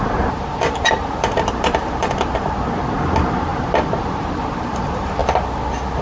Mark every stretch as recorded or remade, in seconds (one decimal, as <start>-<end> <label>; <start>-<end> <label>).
0.0-5.2 remade; 5.2-6.0 recorded